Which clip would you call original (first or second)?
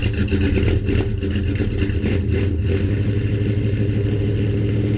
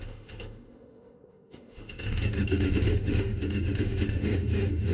first